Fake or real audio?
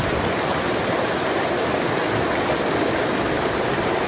real